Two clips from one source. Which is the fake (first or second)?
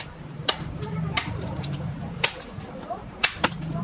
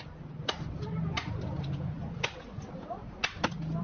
first